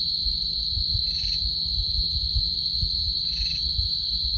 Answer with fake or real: real